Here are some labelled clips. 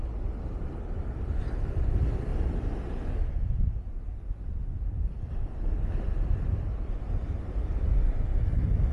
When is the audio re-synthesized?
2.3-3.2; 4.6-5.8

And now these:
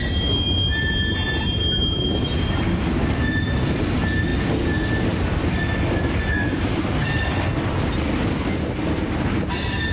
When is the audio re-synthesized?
none

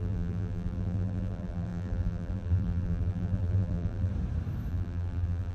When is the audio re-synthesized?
0.0-4.1; 4.7-5.5

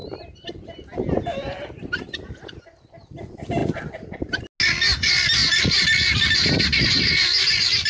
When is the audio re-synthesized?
0.0-1.6; 3.6-4.4; 5.4-6.5